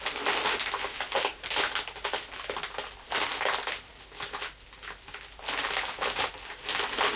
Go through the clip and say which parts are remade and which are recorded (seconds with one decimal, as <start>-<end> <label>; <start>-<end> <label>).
0.0-7.2 recorded